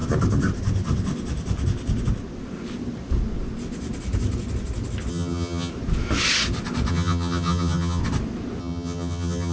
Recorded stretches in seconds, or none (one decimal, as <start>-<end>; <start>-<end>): 0.0-5.1; 5.7-6.9; 8.0-8.6